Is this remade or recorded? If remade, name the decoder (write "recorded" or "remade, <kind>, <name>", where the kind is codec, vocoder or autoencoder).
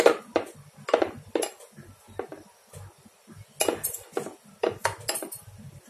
recorded